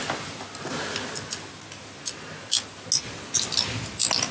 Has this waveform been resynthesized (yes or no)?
no